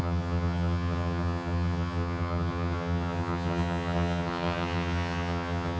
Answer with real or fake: fake